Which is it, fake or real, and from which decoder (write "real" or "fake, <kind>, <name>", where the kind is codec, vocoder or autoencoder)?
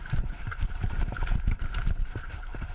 fake, vocoder, BigVGAN v2